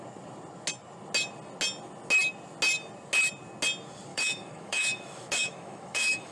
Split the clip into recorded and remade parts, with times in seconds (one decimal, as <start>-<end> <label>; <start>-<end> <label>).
0.0-4.1 recorded; 4.1-6.3 remade